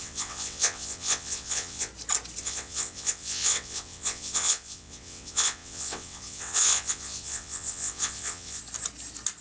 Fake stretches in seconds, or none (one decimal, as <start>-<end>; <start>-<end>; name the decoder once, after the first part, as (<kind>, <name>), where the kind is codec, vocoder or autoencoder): 0.0-1.9 (vocoder, WaveNeXt); 2.4-8.6